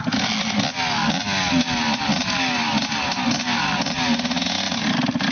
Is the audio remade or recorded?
recorded